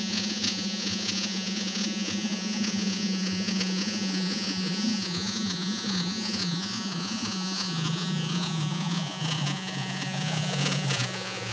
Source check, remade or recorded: remade